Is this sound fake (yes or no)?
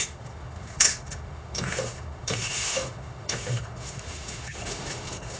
yes